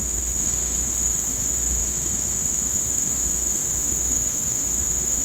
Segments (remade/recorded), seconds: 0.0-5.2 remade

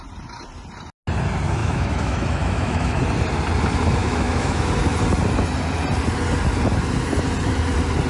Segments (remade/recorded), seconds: 0.0-1.6 recorded; 1.6-3.0 remade; 3.0-4.0 recorded; 4.0-4.7 remade; 4.7-8.1 recorded

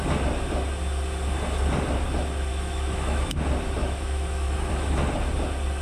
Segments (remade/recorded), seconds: 0.0-2.5 recorded; 2.5-3.4 remade; 3.4-3.8 recorded; 3.8-4.7 remade; 4.7-5.8 recorded

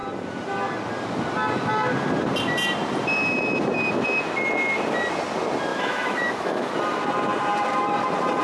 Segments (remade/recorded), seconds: 0.0-5.7 recorded; 5.7-6.7 remade; 6.7-8.4 recorded

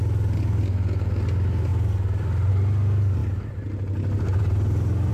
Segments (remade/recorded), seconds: 0.0-5.1 recorded

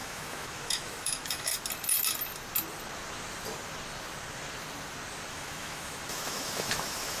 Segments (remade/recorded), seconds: 0.0-1.5 remade; 1.5-5.3 recorded; 5.3-7.2 remade

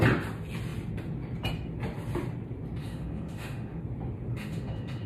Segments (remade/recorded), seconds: 0.0-2.8 recorded; 2.8-3.8 remade; 3.8-4.3 recorded; 4.3-5.1 remade